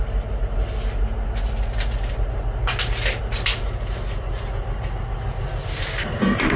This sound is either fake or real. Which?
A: real